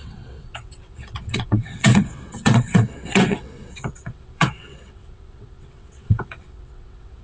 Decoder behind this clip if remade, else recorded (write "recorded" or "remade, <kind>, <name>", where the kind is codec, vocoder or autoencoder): remade, vocoder, WaveNeXt